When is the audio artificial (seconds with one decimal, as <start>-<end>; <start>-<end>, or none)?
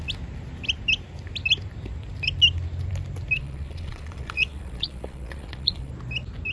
3.4-5.9